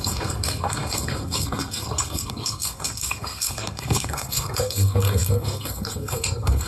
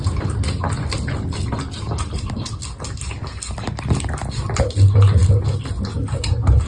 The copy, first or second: first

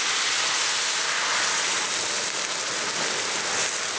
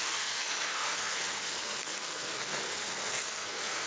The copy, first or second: second